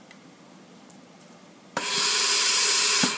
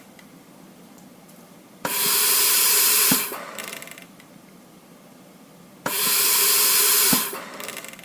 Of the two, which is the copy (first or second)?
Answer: second